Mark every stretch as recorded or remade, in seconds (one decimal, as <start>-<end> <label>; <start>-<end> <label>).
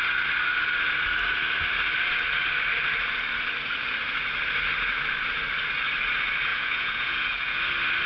0.0-6.5 recorded; 6.5-7.6 remade; 7.6-8.1 recorded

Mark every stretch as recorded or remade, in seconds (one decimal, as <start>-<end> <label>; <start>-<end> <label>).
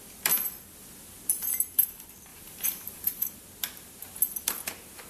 0.0-2.3 recorded; 2.3-3.2 remade; 3.2-5.1 recorded